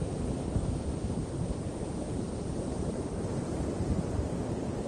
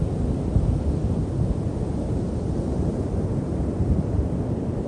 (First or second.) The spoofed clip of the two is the first